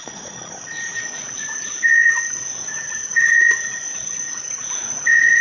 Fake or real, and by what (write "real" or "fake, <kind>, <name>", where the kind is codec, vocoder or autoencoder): fake, vocoder, Vocos